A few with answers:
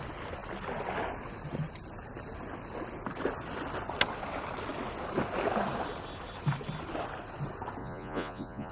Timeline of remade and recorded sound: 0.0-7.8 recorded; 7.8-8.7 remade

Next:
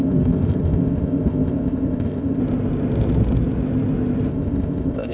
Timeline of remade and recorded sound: 0.0-2.4 remade; 2.4-4.3 recorded; 4.3-5.1 remade

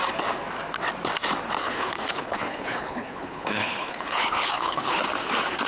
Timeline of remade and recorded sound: 0.0-1.6 recorded; 1.6-5.0 remade; 5.0-5.7 recorded